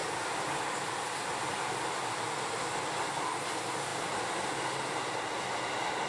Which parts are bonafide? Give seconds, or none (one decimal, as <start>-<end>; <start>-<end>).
0.0-6.1